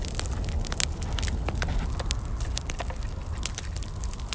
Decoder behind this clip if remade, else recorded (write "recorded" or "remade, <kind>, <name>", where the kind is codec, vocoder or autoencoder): recorded